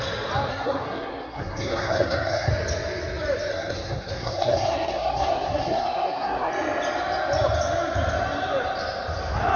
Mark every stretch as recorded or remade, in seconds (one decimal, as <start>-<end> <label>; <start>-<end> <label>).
0.0-0.5 recorded; 0.5-2.5 remade; 2.5-3.5 recorded; 3.5-6.5 remade; 6.5-9.6 recorded